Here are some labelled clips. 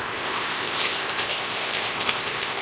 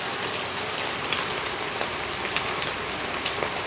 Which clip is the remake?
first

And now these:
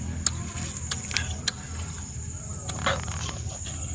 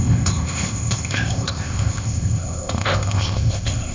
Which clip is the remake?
second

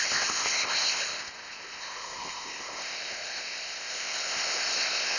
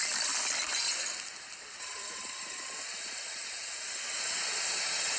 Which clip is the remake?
first